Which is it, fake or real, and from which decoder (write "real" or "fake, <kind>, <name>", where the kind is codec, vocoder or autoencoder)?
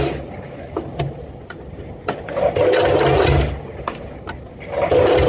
real